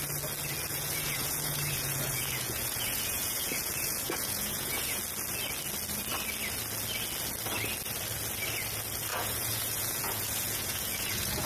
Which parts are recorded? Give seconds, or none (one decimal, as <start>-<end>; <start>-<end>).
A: 0.0-0.7; 5.0-9.1